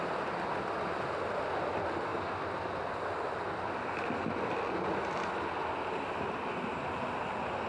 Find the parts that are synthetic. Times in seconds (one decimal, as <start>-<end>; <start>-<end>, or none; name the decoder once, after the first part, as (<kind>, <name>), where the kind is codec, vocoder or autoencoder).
none